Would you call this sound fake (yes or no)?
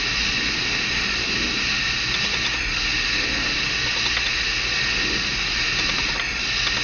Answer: no